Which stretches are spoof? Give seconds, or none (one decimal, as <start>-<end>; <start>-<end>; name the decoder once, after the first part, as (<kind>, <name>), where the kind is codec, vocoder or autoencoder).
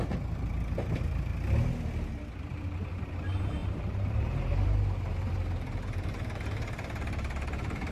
0.0-1.3 (vocoder, BigVGAN v2); 2.4-7.9